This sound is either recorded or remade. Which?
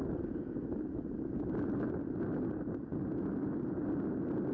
recorded